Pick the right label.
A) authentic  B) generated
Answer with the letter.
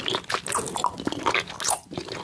A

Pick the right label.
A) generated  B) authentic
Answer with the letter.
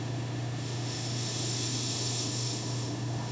A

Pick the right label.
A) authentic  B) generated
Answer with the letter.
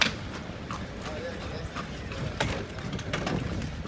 A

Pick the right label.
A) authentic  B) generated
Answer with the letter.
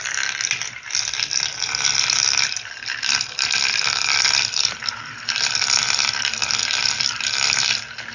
A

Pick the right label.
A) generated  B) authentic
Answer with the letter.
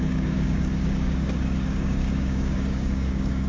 A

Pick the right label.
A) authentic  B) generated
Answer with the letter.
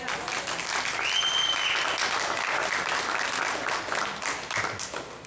A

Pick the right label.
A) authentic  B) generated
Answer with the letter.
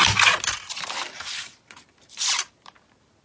A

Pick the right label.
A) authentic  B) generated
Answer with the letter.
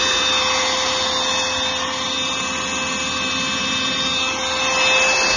A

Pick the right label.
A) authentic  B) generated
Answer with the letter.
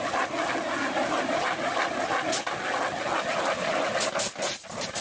A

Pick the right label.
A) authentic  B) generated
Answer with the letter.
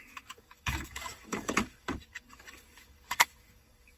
B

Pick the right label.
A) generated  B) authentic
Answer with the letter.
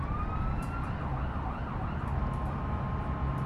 B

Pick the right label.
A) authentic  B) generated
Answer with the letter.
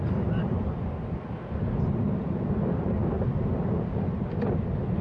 A